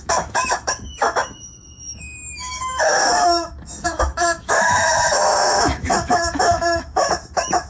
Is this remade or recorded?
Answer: remade